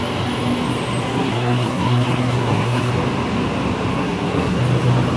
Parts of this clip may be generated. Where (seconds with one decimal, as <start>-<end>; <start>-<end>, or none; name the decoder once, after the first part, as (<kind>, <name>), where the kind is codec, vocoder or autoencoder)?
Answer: 1.0-2.9 (codec, SNAC); 3.9-4.6